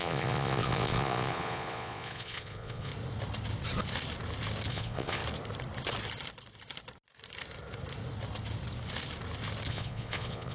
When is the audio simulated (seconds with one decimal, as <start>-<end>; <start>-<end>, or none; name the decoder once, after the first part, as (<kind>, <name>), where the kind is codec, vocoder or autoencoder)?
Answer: 0.0-2.9 (vocoder, Vocos); 4.7-5.2; 9.7-10.5